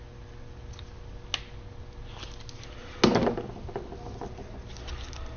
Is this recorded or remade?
recorded